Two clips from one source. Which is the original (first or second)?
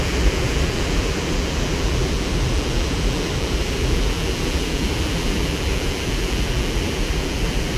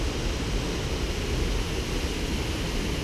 second